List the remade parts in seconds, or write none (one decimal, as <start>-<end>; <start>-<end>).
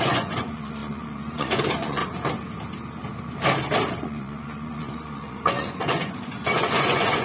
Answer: 0.0-2.0; 4.0-7.2